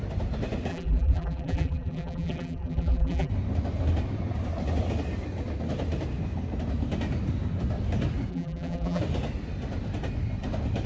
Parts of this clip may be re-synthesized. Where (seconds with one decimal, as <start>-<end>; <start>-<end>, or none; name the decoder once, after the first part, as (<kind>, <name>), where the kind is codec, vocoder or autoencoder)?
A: 0.7-3.3 (vocoder, BigVGAN v2); 8.3-9.0